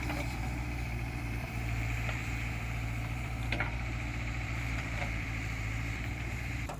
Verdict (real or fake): fake